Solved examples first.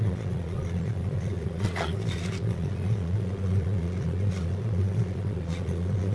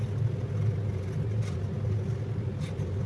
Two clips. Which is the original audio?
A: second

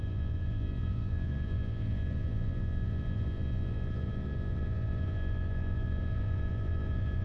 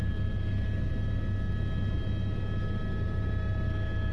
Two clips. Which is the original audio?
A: second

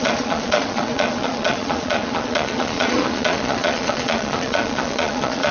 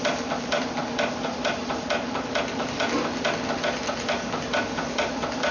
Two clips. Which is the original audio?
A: second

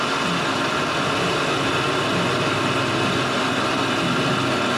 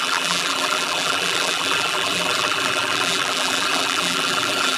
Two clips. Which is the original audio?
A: first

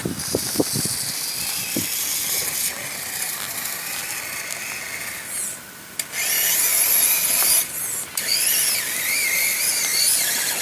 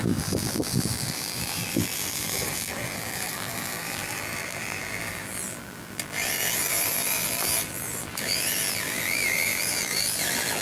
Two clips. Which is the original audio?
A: first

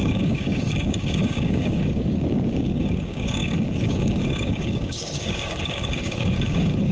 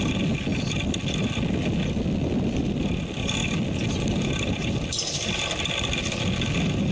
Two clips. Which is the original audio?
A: second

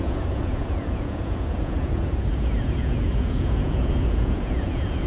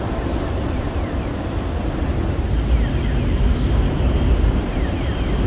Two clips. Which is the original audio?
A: second